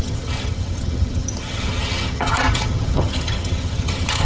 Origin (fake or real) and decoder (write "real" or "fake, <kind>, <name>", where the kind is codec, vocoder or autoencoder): fake, vocoder, HiFi-GAN